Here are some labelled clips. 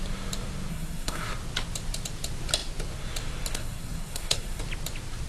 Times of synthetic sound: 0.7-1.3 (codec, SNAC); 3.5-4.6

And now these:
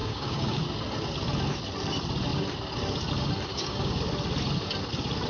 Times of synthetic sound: 0.0-0.6 (codec, DAC); 3.5-4.0

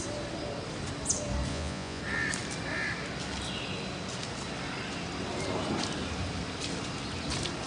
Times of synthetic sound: 1.5-2.0 (vocoder, Vocos)

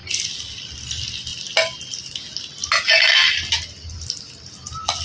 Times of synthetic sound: none

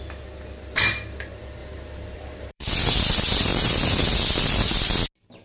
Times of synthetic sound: 1.6-2.7 (vocoder, BigVGAN v2); 3.5-4.0

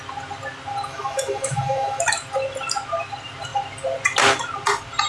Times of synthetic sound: 0.9-2.0 (autoencoder, DAC-VAE)

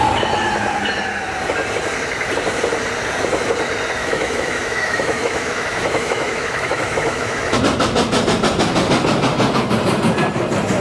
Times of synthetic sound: 4.0-7.6 (autoencoder, DAC-VAE)